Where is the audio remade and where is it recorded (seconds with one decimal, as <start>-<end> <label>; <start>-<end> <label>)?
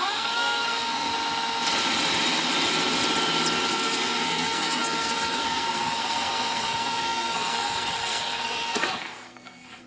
0.0-1.1 remade; 1.1-3.7 recorded; 3.7-9.9 remade